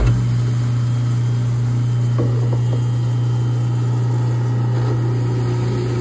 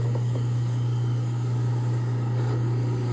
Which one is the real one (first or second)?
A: first